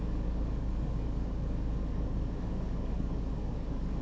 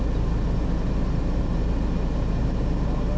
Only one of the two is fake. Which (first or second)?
first